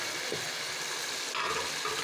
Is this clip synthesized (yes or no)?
no